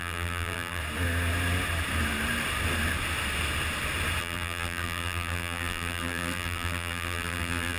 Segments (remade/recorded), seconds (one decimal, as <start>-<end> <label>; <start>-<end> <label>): 0.0-0.8 remade; 0.8-4.2 recorded; 4.2-7.8 remade